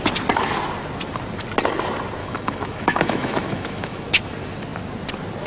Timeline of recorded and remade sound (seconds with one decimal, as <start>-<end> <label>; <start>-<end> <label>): 0.0-2.2 recorded; 2.2-4.1 remade; 4.1-5.5 recorded